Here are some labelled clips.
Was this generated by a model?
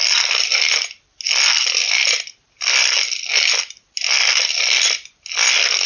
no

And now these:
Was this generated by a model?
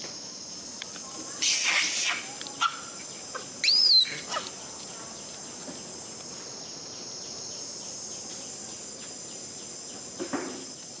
no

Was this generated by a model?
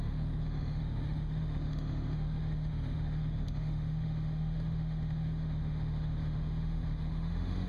yes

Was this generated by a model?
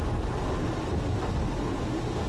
no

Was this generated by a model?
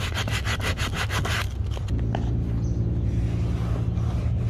no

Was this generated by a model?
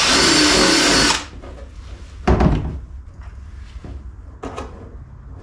no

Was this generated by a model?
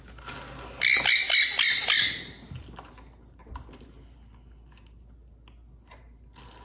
no